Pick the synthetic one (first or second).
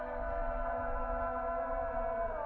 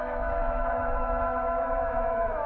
second